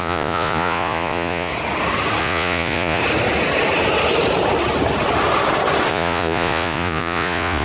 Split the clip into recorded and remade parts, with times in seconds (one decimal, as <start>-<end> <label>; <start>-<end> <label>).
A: 0.0-1.5 remade; 1.5-2.2 recorded; 2.2-3.0 remade; 3.0-5.9 recorded; 5.9-7.6 remade